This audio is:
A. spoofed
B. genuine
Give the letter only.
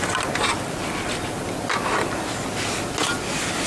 B